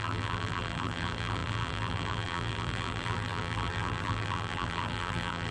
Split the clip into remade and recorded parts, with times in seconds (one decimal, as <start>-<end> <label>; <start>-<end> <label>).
0.0-5.5 remade